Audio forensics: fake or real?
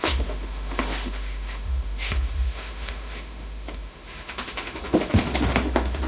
fake